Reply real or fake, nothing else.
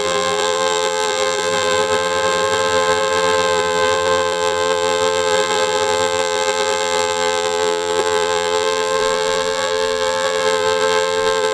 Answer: fake